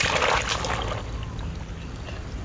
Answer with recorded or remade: remade